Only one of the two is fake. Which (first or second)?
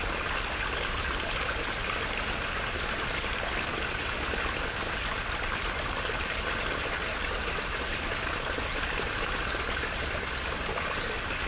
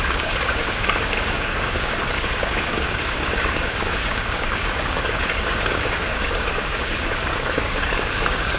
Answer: second